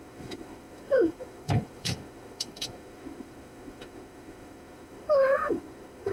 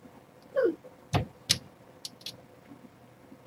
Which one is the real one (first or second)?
second